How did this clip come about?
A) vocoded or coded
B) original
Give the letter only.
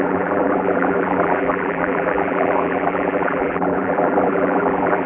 A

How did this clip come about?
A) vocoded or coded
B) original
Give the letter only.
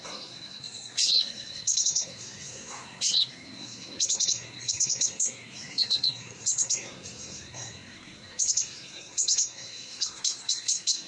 A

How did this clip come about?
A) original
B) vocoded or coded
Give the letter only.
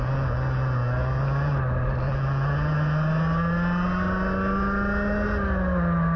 A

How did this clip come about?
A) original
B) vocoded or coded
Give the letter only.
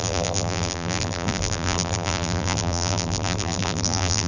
B